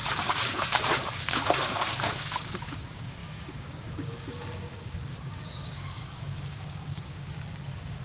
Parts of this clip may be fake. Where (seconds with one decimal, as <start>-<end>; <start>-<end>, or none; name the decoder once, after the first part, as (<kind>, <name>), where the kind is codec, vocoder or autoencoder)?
0.0-8.0 (codec, DAC)